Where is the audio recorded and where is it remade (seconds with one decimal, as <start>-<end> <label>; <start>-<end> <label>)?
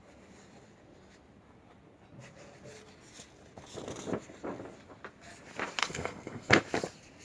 0.0-5.8 recorded; 5.8-6.5 remade; 6.5-7.2 recorded